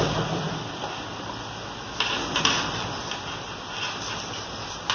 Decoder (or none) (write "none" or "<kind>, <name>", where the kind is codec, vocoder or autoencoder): none